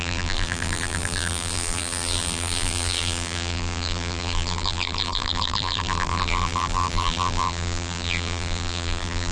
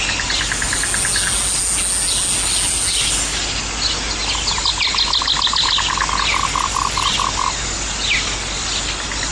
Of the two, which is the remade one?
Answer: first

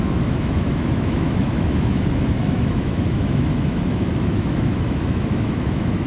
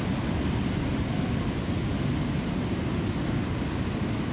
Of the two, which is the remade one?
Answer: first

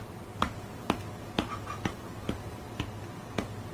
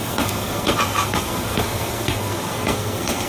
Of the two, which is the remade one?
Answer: second